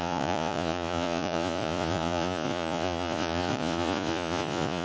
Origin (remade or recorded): remade